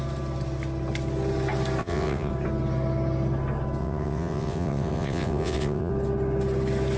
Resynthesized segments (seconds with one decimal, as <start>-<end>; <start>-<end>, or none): 1.8-2.3; 3.8-5.9